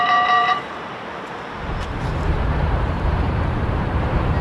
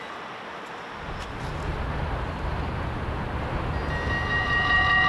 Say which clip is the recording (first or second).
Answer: second